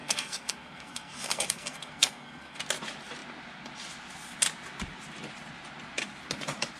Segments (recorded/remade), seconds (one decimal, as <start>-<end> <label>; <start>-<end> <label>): 0.0-2.6 remade; 2.6-6.8 recorded